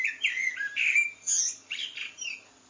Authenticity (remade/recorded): recorded